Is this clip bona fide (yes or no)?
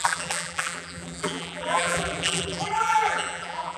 no